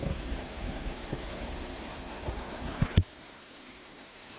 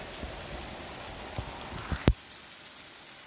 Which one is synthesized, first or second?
first